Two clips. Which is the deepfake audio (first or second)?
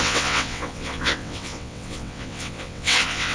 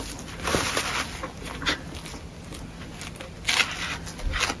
first